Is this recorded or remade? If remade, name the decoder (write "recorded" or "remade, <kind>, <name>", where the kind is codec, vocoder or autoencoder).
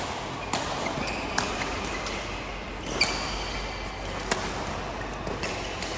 recorded